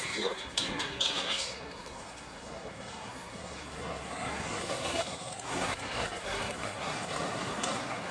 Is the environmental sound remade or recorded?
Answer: remade